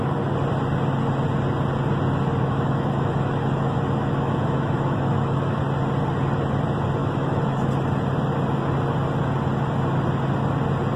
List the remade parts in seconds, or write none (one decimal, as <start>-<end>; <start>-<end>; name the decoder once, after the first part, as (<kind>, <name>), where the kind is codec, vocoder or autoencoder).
2.4-5.6 (autoencoder, DAC-VAE); 7.0-7.7

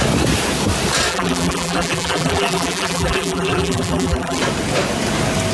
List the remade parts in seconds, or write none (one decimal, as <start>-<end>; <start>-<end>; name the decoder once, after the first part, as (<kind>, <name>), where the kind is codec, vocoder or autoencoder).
1.1-4.4 (vocoder, BigVGAN v2)